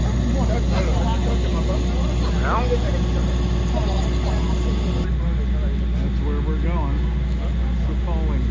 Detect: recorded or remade recorded